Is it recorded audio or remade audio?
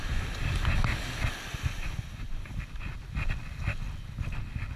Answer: recorded